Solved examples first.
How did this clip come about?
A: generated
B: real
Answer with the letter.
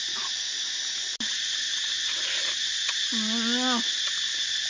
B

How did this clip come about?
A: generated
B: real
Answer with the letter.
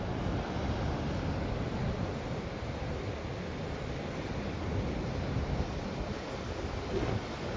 B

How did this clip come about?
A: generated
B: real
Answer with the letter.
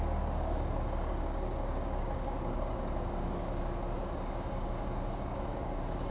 A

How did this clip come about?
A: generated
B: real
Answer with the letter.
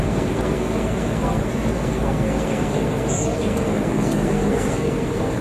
A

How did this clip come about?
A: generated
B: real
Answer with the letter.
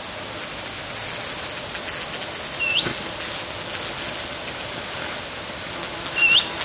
B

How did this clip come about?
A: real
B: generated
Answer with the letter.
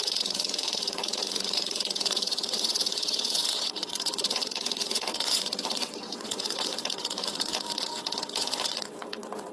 B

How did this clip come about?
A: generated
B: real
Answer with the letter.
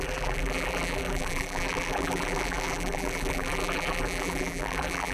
A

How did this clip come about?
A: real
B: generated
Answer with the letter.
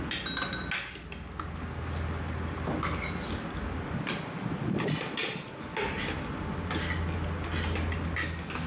A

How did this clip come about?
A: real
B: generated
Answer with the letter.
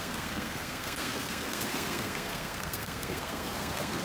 B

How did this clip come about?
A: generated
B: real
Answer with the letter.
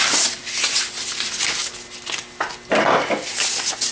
B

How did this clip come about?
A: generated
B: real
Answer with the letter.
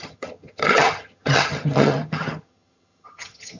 A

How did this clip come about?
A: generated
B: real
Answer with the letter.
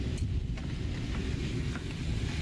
B